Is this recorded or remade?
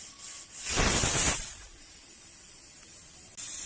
recorded